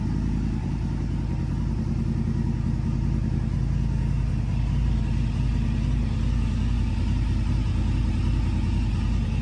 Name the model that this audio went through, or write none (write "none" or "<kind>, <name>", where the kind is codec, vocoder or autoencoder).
none